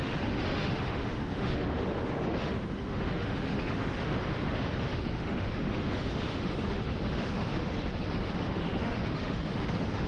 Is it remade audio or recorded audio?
remade